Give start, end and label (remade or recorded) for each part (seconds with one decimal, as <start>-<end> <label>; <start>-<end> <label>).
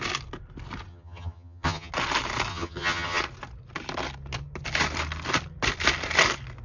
0.0-0.9 recorded; 0.9-1.9 remade; 1.9-2.5 recorded; 2.5-3.2 remade; 3.2-6.6 recorded